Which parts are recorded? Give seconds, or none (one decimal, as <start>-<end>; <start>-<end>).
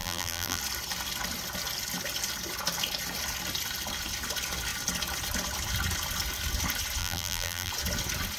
0.6-7.0; 7.7-8.4